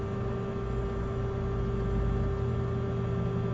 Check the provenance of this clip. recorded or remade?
recorded